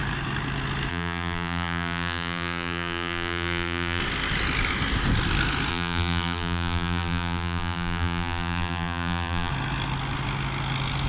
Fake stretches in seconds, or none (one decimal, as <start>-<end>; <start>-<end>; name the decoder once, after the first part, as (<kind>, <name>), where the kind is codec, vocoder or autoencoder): 0.9-4.0 (vocoder, BigVGAN v2); 5.7-9.5

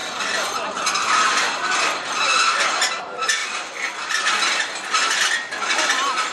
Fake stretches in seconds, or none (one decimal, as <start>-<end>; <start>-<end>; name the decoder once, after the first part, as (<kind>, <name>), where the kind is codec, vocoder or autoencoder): 0.0-3.0 (vocoder, BigVGAN v2)

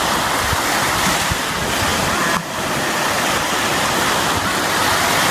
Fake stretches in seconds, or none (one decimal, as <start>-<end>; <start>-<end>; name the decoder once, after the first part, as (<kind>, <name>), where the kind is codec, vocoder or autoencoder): none

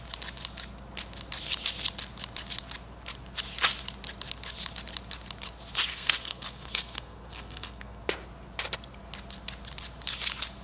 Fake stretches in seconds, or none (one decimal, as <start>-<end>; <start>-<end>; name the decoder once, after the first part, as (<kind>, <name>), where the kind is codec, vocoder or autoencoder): 5.9-8.0 (codec, SNAC)